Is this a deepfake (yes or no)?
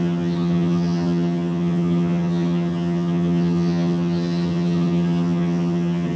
yes